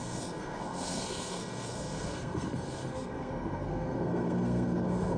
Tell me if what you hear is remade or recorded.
remade